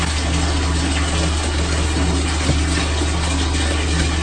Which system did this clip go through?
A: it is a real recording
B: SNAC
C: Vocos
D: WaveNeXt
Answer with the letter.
A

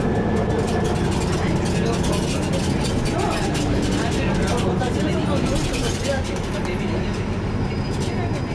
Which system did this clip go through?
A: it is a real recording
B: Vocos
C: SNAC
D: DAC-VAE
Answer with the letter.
A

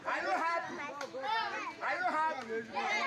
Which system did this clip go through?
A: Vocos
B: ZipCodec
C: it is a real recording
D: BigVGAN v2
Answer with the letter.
C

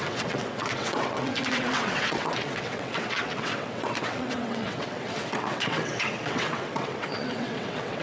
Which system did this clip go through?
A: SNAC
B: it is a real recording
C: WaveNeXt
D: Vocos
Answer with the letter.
C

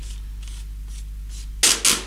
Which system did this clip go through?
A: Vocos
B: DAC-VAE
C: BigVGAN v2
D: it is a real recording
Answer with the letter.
D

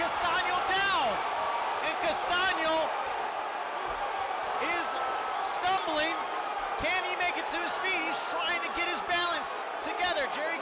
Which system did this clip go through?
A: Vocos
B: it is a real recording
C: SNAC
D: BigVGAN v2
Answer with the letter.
B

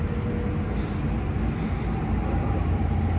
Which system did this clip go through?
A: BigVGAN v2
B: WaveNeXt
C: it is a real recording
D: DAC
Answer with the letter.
C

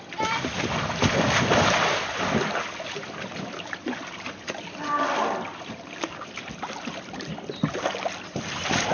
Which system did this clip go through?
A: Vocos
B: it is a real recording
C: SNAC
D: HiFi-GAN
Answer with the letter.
B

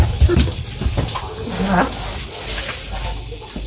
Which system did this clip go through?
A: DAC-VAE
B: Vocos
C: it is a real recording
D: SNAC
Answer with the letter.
C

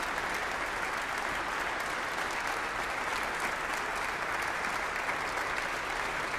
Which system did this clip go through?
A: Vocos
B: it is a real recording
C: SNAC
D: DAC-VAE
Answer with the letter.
B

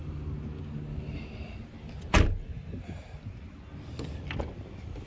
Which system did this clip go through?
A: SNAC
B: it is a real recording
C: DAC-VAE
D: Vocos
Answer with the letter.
B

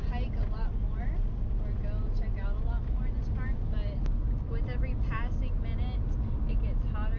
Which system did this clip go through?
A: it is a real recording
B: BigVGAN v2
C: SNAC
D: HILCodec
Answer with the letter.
A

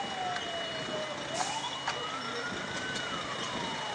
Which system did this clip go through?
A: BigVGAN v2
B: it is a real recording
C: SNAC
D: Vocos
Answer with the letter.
B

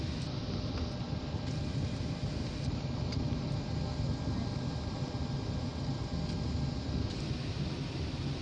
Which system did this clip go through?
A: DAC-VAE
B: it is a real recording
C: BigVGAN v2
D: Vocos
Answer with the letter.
B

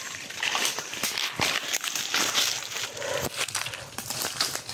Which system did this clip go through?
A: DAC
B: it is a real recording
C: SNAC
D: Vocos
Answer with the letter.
B